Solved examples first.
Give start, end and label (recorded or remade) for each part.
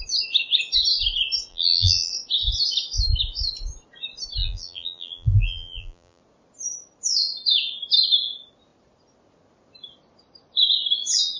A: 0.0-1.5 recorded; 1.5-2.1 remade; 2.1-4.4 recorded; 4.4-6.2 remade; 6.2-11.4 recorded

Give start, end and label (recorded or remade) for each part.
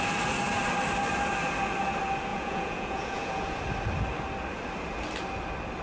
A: 0.0-2.3 recorded; 2.3-3.6 remade; 3.6-5.8 recorded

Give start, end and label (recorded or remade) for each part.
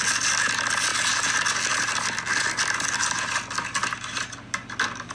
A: 0.0-5.1 recorded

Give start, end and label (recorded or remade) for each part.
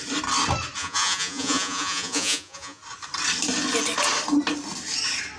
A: 0.0-0.8 recorded; 0.8-2.8 remade; 2.8-5.4 recorded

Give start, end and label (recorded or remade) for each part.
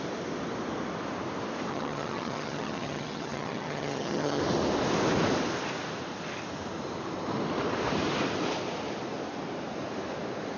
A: 0.0-1.7 recorded; 1.7-4.4 remade; 4.4-10.6 recorded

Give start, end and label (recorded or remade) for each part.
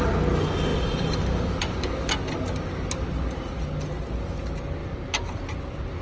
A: 0.0-0.7 recorded; 0.7-1.8 remade; 1.8-6.0 recorded